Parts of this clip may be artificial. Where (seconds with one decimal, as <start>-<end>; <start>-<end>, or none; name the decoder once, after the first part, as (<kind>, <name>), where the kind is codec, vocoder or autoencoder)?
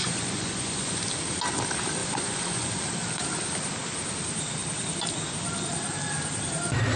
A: 0.0-1.0 (vocoder, Vocos); 2.0-2.8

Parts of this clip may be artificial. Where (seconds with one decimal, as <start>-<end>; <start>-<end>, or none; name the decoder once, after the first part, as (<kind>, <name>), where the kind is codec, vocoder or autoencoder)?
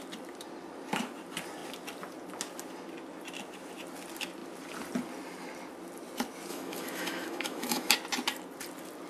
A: 6.5-7.9 (autoencoder, DAC-VAE)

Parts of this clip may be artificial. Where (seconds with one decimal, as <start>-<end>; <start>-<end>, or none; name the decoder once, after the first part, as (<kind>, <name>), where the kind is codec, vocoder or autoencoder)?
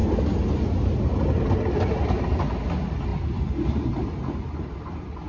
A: none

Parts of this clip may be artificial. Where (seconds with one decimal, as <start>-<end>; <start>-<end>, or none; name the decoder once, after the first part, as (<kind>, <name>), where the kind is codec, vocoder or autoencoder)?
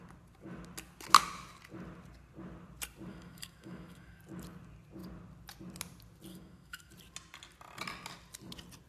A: 3.1-4.2 (autoencoder, DAC-VAE); 6.3-6.9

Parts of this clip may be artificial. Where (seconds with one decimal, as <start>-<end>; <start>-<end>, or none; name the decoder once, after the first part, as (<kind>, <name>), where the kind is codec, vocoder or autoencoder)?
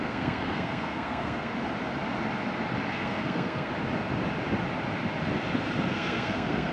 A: 0.0-1.5 (codec, SNAC); 2.9-3.7; 5.9-6.7